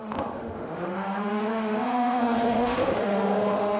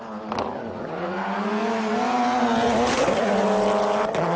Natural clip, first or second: second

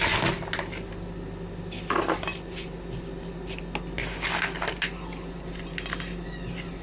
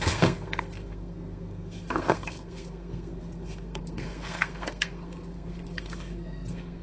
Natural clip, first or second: first